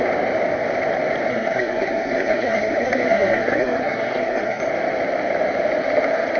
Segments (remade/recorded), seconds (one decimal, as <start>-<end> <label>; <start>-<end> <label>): 0.0-1.3 recorded; 1.3-4.6 remade; 4.6-6.4 recorded